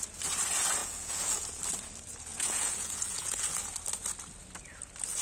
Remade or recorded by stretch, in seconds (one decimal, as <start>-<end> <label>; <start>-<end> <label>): 0.0-0.8 recorded; 0.8-1.6 remade; 1.6-2.3 recorded; 2.3-3.6 remade; 3.6-5.2 recorded

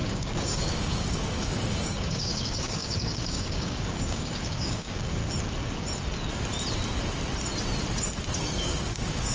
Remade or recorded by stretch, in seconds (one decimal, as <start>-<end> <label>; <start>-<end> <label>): 0.0-5.2 remade; 5.2-8.4 recorded; 8.4-9.3 remade